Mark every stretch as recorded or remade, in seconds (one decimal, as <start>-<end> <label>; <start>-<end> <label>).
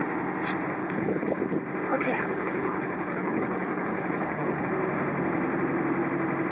0.0-0.8 recorded; 0.8-1.4 remade; 1.4-1.9 recorded; 1.9-4.7 remade; 4.7-6.5 recorded